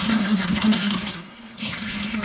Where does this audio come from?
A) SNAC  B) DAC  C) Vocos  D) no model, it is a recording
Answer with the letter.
A